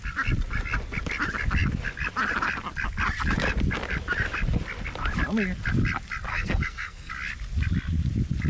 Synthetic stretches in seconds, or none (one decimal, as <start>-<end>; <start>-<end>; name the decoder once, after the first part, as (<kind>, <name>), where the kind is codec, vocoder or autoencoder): 6.3-7.1 (codec, SNAC)